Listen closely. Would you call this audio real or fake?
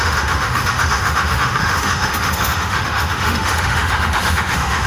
fake